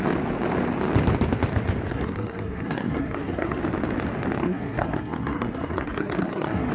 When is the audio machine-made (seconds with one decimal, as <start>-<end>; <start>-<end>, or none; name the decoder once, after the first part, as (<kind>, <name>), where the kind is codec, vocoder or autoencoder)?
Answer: 1.9-3.6 (codec, SNAC); 4.4-6.7

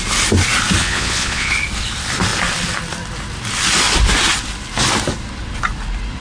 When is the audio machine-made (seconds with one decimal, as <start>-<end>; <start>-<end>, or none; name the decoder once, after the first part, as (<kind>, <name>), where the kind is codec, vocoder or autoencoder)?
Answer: 0.8-1.5 (vocoder, Vocos)